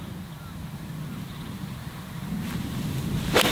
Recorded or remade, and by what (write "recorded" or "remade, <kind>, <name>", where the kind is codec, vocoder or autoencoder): recorded